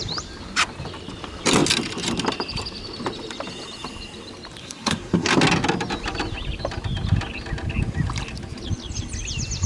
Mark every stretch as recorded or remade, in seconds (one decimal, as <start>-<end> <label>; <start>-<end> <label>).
0.0-4.6 recorded; 4.6-5.3 remade; 5.3-9.7 recorded